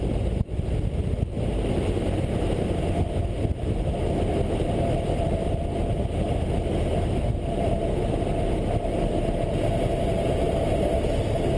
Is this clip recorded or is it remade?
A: recorded